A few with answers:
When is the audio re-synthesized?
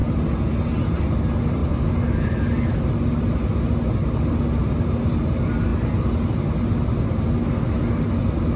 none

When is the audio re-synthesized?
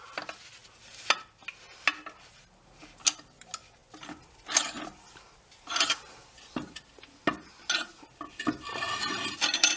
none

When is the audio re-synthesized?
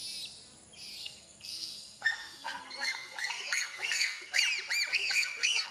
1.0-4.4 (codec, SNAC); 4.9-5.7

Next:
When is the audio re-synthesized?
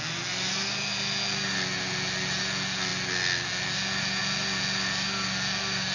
none